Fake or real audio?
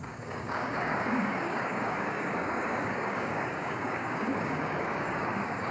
fake